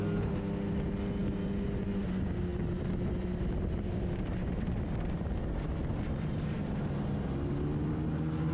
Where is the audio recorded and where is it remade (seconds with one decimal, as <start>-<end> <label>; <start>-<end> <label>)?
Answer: 0.0-8.5 recorded